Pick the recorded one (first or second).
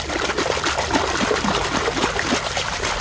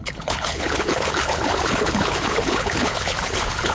first